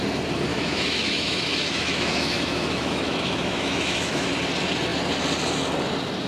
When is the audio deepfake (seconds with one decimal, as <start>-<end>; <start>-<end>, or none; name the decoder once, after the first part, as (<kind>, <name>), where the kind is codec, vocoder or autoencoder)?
0.5-4.3 (autoencoder, DAC-VAE)